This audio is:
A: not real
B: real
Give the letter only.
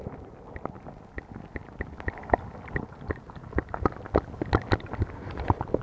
B